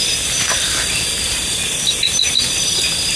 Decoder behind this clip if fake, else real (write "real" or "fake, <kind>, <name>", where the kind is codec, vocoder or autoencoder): real